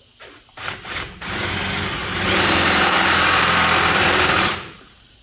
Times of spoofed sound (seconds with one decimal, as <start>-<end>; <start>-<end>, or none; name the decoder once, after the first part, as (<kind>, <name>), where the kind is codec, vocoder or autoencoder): 2.0-5.2 (vocoder, BigVGAN v2)

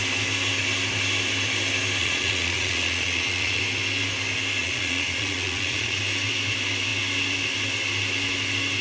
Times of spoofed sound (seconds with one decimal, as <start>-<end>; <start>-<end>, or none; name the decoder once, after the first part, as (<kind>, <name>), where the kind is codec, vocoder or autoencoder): 2.0-3.6 (vocoder, Vocos); 4.6-6.0

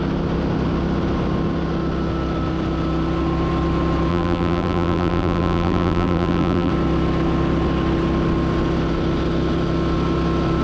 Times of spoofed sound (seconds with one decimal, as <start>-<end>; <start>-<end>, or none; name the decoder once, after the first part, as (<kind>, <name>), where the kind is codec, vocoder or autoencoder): 4.1-6.7 (vocoder, BigVGAN v2)

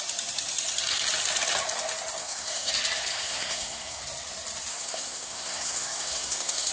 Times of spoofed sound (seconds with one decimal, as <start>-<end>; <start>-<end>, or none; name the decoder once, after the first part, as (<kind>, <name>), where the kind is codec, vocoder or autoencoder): 2.2-2.7 (codec, SNAC); 3.1-4.0; 4.7-6.7

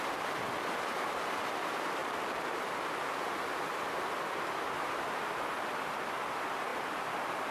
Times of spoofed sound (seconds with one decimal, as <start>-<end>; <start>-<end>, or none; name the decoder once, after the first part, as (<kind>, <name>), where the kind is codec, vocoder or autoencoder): none